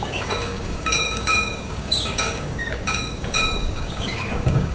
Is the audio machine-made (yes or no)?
yes